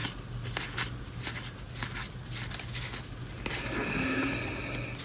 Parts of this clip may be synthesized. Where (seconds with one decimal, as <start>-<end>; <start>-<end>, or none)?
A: none